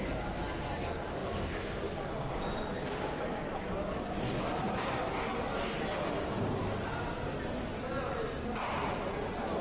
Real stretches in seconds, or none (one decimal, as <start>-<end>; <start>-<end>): 0.0-9.6